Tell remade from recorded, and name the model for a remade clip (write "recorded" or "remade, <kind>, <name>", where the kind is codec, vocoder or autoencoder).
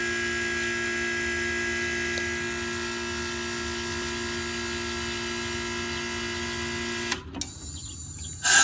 recorded